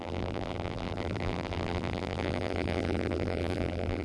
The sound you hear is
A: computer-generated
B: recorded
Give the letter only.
A